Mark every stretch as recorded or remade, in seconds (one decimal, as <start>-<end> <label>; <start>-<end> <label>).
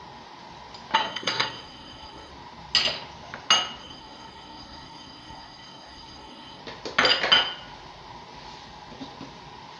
0.0-1.0 recorded; 1.0-2.3 remade; 2.3-3.8 recorded; 3.8-6.6 remade; 6.6-9.8 recorded